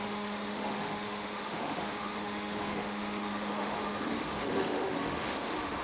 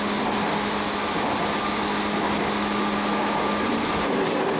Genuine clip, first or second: second